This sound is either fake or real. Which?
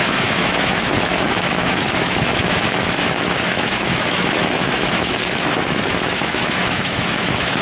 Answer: fake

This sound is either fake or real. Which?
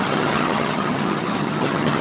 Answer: fake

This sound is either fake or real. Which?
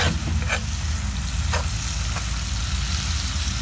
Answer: real